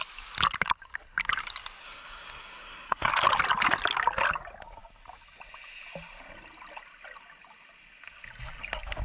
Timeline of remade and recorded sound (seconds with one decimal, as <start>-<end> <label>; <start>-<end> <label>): 0.0-1.8 recorded; 1.8-3.1 remade; 3.1-9.0 recorded